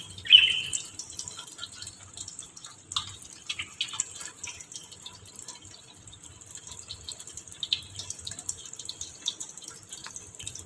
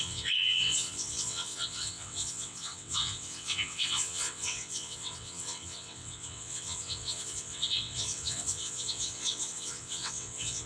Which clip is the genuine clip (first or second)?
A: first